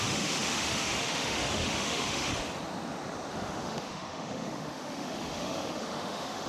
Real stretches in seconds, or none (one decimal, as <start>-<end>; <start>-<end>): 2.3-3.3